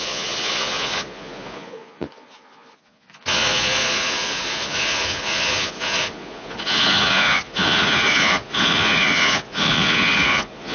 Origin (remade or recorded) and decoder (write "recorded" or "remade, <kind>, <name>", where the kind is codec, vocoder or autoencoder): remade, vocoder, Vocos